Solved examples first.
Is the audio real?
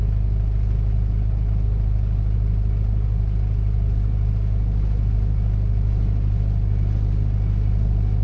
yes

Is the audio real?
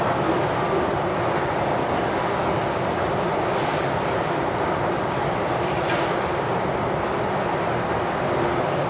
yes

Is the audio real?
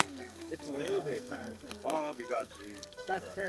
no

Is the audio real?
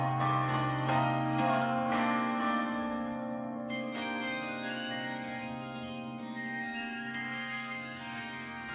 no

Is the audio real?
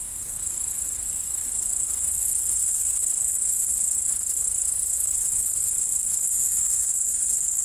no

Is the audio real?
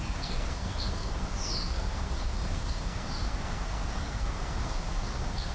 no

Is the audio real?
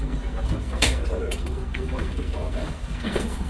no